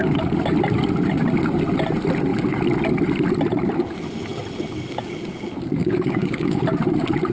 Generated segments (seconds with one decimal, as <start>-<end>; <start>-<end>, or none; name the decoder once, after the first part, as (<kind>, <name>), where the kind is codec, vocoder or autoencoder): 5.8-6.6 (codec, DAC)